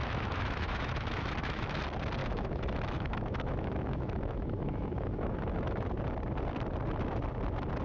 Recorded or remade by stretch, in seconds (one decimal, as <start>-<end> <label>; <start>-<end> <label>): 0.0-1.8 remade; 1.8-2.2 recorded; 2.2-5.9 remade; 5.9-7.8 recorded